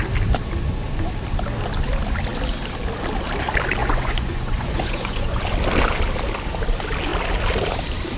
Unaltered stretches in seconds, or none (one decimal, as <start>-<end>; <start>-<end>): 0.0-3.8; 5.4-8.2